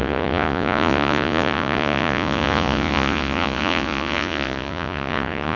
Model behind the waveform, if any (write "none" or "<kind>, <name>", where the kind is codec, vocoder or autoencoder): vocoder, Vocos